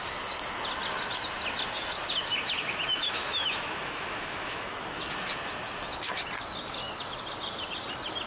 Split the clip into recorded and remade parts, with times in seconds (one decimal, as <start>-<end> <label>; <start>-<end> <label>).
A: 0.0-2.9 recorded; 2.9-4.7 remade; 4.7-8.3 recorded